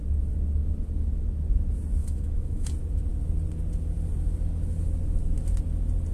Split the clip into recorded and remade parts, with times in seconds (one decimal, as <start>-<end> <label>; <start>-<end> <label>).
0.0-2.0 recorded; 2.0-2.7 remade; 2.7-6.1 recorded